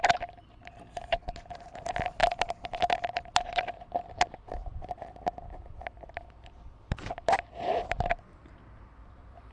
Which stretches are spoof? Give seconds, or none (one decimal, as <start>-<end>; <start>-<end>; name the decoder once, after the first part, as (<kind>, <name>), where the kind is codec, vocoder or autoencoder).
0.0-9.5 (vocoder, BigVGAN v2)

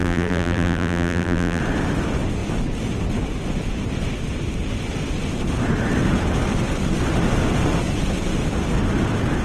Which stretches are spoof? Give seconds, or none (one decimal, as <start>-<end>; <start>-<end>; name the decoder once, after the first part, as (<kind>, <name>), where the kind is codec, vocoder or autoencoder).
0.0-1.6 (vocoder, BigVGAN v2)